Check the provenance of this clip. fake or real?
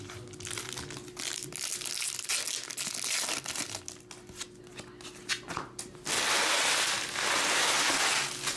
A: real